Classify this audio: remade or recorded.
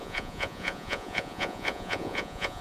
remade